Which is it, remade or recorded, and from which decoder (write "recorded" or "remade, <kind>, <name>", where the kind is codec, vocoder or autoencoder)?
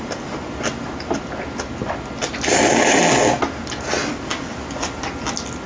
recorded